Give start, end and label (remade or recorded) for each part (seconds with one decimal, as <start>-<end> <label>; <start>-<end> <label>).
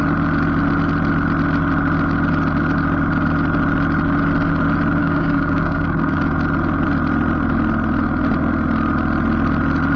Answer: 0.0-5.0 recorded; 5.0-6.2 remade; 6.2-10.0 recorded